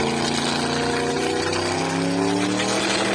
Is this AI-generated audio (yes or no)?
no